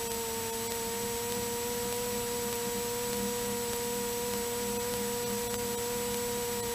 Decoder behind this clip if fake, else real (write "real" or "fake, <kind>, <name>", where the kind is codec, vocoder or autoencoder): real